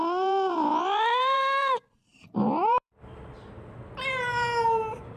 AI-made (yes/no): yes